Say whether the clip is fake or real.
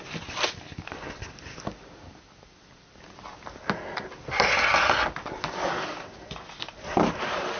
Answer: real